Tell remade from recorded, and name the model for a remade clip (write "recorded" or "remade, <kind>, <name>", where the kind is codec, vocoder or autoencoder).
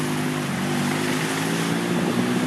recorded